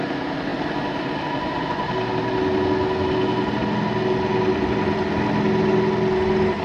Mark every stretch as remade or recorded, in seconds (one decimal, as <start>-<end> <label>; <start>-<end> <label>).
0.0-0.5 recorded; 0.5-1.9 remade; 1.9-6.6 recorded